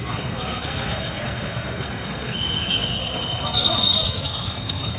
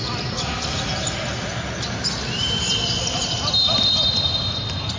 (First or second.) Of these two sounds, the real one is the second